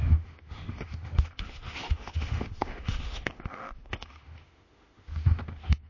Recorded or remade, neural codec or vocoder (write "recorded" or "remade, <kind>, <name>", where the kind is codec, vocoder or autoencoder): remade, autoencoder, DAC-VAE